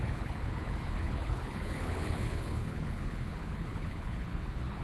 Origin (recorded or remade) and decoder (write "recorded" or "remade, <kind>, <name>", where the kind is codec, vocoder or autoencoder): remade, codec, HILCodec